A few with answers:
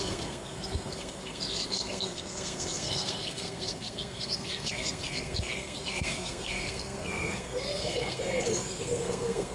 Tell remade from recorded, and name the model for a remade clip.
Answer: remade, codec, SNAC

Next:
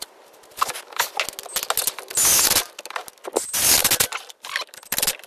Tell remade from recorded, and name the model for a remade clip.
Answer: recorded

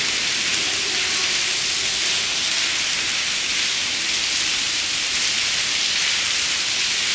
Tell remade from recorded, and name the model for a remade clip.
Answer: recorded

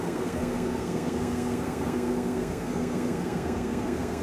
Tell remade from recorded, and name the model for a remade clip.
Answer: remade, codec, SNAC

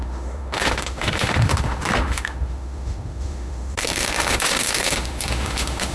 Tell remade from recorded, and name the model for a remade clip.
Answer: remade, autoencoder, DAC-VAE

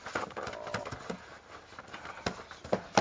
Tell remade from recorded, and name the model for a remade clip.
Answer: recorded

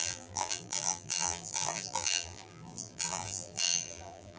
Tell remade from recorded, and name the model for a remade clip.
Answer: remade, vocoder, BigVGAN v2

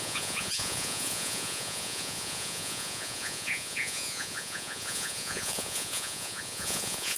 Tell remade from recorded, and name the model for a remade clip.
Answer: remade, vocoder, Vocos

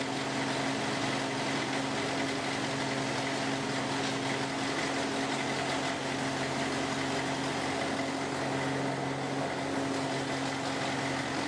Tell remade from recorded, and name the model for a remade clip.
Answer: recorded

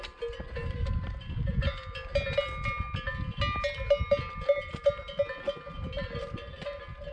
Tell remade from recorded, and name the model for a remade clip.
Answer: recorded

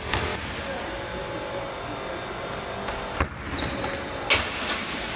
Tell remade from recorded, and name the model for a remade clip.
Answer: recorded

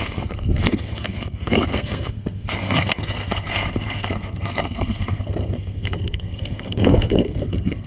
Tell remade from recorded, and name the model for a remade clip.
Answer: remade, codec, SNAC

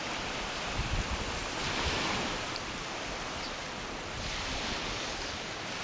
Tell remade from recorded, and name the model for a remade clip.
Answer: recorded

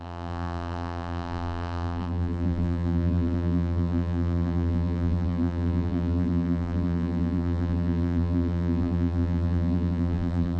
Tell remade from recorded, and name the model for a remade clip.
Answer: remade, vocoder, BigVGAN v2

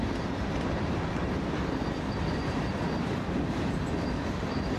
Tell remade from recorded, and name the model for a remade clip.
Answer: recorded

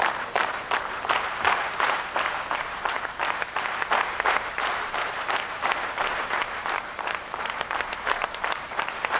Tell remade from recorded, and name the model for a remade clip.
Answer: remade, vocoder, BigVGAN v2